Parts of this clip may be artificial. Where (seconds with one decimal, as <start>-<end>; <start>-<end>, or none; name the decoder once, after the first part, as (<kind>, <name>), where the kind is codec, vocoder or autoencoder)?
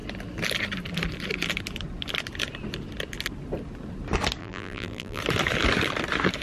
4.4-5.2 (vocoder, BigVGAN v2)